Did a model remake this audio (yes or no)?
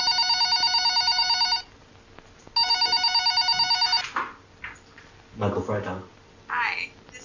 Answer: no